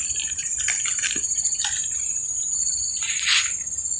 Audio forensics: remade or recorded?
recorded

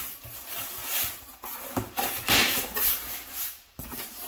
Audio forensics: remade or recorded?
remade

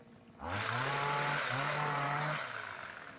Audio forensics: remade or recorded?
recorded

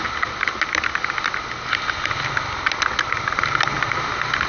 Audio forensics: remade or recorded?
recorded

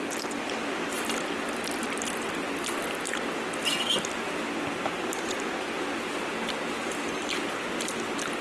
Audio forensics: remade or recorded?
recorded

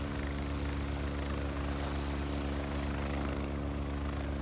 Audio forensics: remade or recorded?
recorded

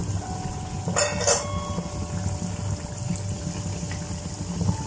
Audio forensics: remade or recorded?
recorded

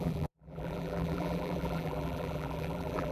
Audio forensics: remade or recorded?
remade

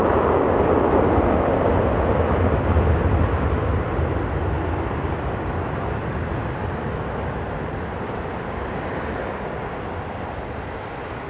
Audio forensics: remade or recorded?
recorded